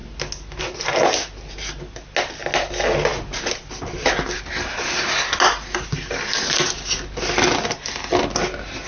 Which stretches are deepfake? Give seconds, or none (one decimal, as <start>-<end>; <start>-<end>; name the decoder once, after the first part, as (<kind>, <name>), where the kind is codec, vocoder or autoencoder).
none